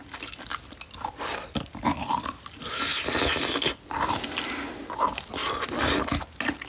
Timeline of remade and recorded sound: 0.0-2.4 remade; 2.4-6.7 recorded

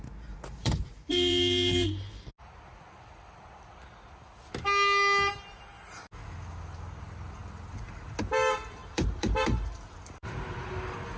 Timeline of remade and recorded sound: 0.0-0.6 recorded; 0.6-2.3 remade; 2.3-8.8 recorded; 8.8-10.3 remade; 10.3-11.2 recorded

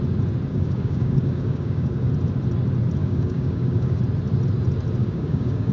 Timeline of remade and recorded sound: 0.0-0.5 recorded; 0.5-2.1 remade; 2.1-3.0 recorded; 3.0-4.0 remade; 4.0-5.0 recorded; 5.0-5.7 remade

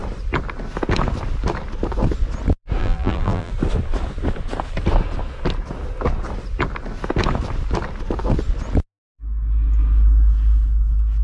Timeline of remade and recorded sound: 0.0-2.8 recorded; 2.8-3.5 remade; 3.5-11.2 recorded

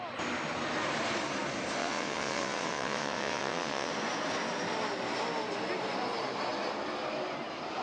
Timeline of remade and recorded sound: 0.0-1.8 recorded; 1.8-3.9 remade; 3.9-7.8 recorded

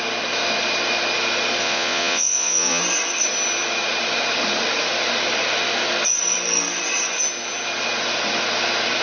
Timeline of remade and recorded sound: 0.0-1.6 recorded; 1.6-2.8 remade; 2.8-9.0 recorded

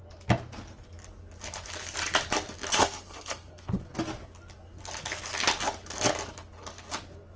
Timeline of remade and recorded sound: 0.0-2.8 recorded; 2.8-3.9 remade; 3.9-7.4 recorded

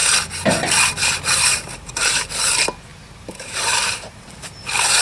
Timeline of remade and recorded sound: 0.0-1.5 recorded; 1.5-2.3 remade; 2.3-2.9 recorded; 2.9-4.3 remade; 4.3-5.0 recorded